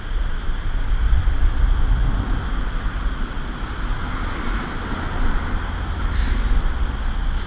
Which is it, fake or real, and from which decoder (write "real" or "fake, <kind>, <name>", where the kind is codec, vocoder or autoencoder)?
real